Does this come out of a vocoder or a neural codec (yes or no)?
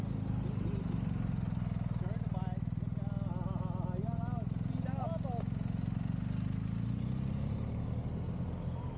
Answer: no